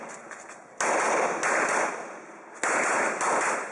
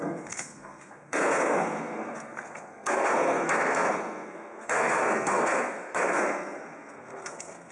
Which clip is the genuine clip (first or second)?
first